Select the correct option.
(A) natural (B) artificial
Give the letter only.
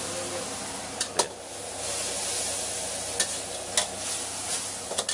A